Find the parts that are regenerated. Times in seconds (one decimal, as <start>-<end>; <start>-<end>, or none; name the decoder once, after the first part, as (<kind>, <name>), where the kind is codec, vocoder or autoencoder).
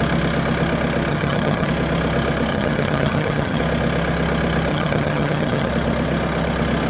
1.1-1.7 (vocoder, HiFi-GAN); 2.5-3.6; 4.7-5.7